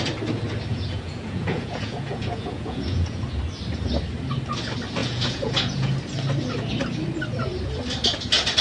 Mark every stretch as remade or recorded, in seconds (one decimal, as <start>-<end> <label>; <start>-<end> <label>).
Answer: 0.0-0.7 recorded; 0.7-3.2 remade; 3.2-5.0 recorded; 5.0-5.9 remade; 5.9-8.6 recorded